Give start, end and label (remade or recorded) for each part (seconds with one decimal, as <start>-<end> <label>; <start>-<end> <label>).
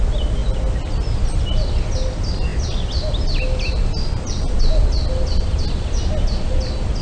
0.0-7.0 recorded